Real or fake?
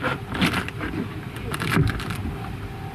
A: fake